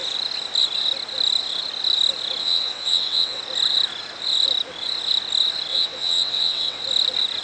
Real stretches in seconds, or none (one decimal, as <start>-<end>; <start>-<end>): 0.0-2.4; 3.4-5.7; 6.8-7.4